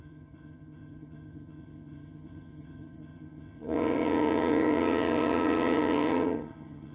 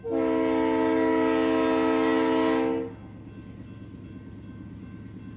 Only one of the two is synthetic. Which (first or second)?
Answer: first